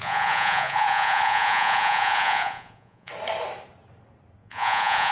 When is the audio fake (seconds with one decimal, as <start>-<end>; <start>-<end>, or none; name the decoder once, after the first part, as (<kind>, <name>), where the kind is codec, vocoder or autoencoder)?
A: 0.0-3.1 (vocoder, Vocos); 4.4-5.1